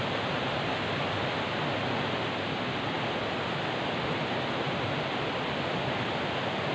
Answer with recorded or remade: recorded